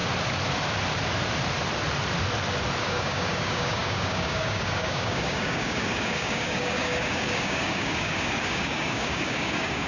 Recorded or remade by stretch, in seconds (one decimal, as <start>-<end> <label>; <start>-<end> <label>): 0.0-2.8 recorded; 2.8-9.9 remade